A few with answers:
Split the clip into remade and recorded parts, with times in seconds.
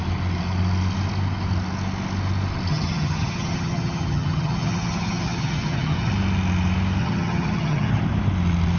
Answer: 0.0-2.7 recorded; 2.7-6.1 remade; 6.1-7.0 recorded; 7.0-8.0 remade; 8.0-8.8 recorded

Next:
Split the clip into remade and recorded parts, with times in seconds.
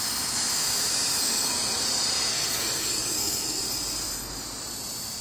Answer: 0.0-1.2 recorded; 1.2-1.8 remade; 1.8-2.3 recorded; 2.3-3.6 remade; 3.6-5.2 recorded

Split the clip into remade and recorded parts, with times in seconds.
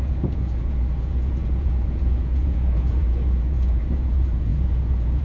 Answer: 0.0-5.2 remade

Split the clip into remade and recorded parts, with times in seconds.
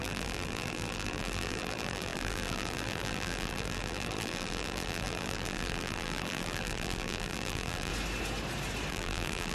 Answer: 0.0-7.9 remade; 7.9-8.9 recorded; 8.9-9.5 remade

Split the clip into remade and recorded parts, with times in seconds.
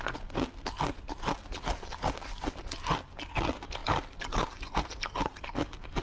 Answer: 0.0-6.0 recorded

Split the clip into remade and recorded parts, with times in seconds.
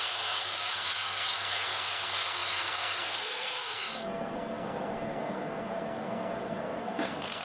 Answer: 0.0-7.4 remade